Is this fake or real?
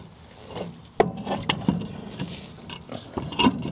real